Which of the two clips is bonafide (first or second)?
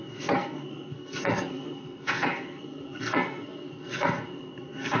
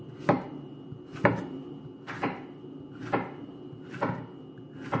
second